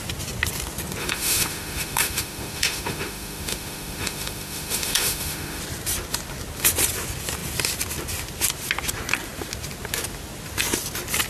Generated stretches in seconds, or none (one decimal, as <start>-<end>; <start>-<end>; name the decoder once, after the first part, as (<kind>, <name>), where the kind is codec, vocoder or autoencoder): 1.0-5.6 (autoencoder, DAC-VAE)